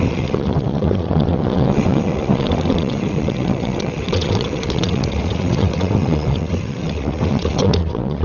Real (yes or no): no